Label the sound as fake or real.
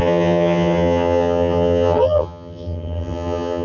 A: fake